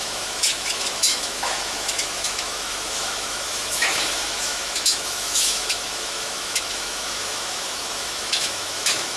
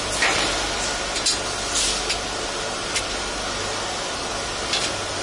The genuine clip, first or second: second